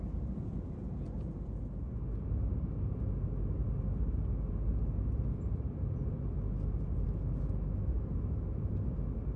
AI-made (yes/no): no